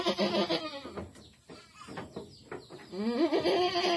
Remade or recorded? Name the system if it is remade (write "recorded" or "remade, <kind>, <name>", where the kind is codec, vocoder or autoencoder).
recorded